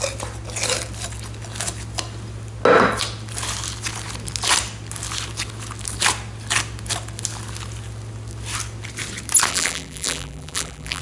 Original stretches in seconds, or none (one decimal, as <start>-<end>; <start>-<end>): 0.0-9.5